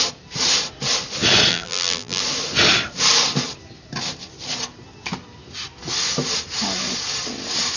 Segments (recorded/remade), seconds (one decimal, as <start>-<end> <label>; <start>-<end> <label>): 0.0-1.5 recorded; 1.5-2.2 remade; 2.2-7.8 recorded